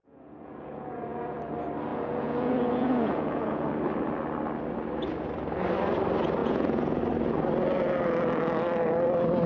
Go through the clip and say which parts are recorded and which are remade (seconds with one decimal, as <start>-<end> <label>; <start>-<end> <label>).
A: 0.0-1.5 remade; 1.5-1.9 recorded; 1.9-3.7 remade; 3.7-6.4 recorded; 6.4-7.0 remade; 7.0-9.5 recorded